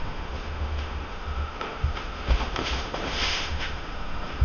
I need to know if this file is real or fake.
fake